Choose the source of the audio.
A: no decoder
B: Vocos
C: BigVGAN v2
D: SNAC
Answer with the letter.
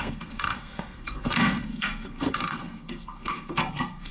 D